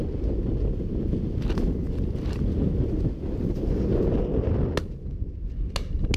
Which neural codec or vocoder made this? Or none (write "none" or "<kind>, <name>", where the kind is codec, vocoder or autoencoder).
none